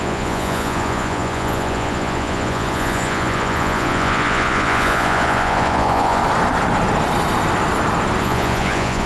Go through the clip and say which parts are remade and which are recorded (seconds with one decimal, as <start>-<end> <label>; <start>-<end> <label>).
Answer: 0.0-6.2 remade; 6.2-8.2 recorded; 8.2-9.1 remade